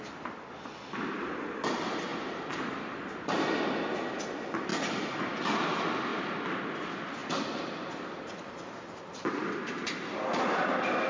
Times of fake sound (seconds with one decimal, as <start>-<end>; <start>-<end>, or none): none